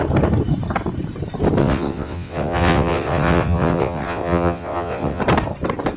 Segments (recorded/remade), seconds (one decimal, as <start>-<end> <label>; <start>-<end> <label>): 0.0-1.6 recorded; 1.6-5.2 remade; 5.2-6.0 recorded

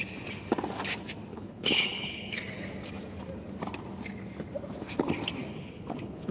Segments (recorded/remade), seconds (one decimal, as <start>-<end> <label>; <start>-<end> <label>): 0.0-1.3 recorded; 1.3-2.4 remade; 2.4-5.5 recorded; 5.5-6.3 remade

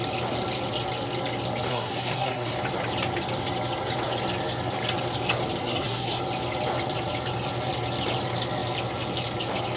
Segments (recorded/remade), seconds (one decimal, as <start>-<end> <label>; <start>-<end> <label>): 0.0-1.7 recorded; 1.7-2.5 remade; 2.5-5.6 recorded; 5.6-6.2 remade; 6.2-9.8 recorded

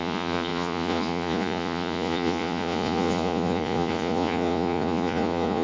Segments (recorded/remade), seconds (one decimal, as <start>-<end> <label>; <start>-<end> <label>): 0.0-5.6 remade

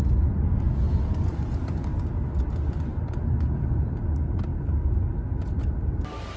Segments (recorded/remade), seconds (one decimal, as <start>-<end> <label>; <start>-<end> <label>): 0.0-6.4 recorded

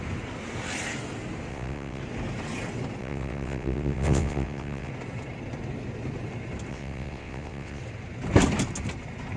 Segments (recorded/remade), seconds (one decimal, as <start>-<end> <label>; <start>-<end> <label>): 0.0-1.5 recorded; 1.5-2.0 remade; 2.0-3.0 recorded; 3.0-4.9 remade; 4.9-6.7 recorded; 6.7-7.8 remade; 7.8-9.4 recorded

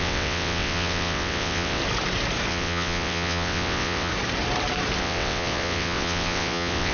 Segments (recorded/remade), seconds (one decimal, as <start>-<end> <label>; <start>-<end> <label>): 0.0-1.8 remade; 1.8-2.5 recorded; 2.5-4.1 remade; 4.1-5.0 recorded; 5.0-6.9 remade